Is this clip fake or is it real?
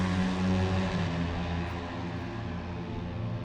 real